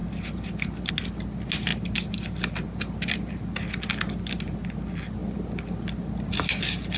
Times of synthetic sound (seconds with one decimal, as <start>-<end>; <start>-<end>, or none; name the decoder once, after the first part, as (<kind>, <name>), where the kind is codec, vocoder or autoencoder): none